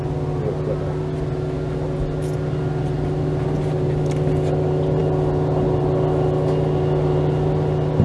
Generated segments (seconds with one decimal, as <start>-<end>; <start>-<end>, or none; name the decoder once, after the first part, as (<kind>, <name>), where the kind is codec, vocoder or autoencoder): none